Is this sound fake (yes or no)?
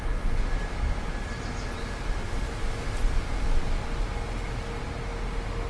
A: no